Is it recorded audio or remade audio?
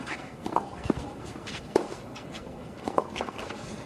remade